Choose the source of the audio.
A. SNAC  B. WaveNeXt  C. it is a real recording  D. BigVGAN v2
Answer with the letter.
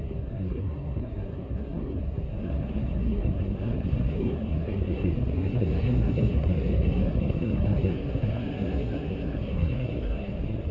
A